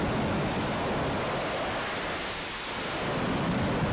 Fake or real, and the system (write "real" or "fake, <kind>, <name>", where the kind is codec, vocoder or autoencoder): real